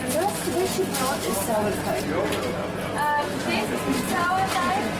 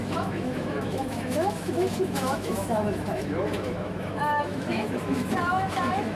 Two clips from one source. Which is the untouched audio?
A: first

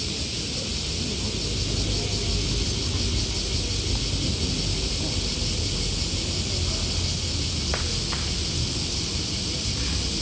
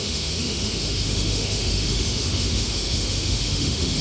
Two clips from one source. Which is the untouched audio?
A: first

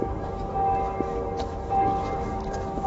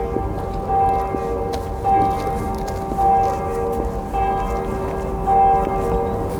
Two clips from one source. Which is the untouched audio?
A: second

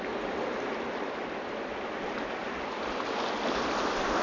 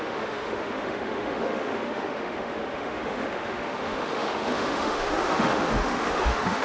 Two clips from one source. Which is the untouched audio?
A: first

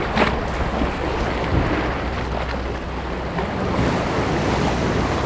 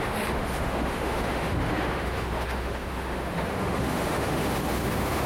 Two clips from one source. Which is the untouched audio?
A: first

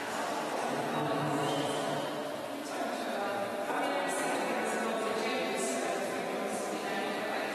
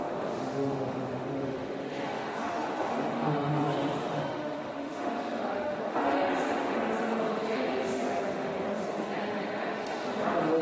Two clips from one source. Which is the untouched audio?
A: first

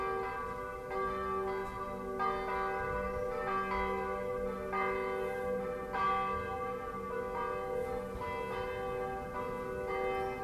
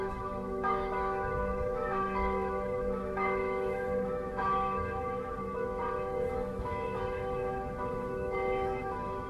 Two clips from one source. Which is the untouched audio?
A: first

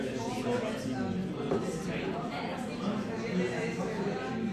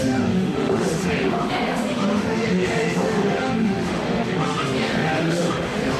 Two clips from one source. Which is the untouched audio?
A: first